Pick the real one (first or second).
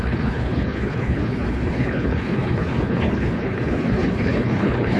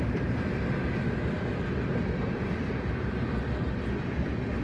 second